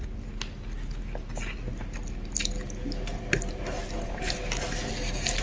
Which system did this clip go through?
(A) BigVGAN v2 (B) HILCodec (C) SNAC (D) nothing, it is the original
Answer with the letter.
D